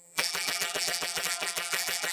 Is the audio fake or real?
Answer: fake